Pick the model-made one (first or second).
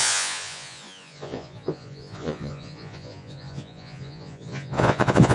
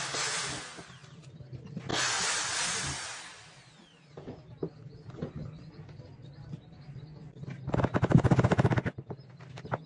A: first